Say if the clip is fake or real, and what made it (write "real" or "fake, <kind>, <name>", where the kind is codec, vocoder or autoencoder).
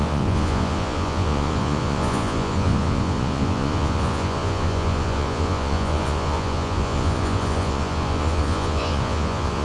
fake, vocoder, Vocos